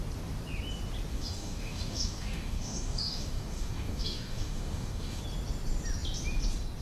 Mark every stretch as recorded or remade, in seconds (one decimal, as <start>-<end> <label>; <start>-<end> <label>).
0.0-1.1 recorded; 1.1-5.2 remade; 5.2-6.8 recorded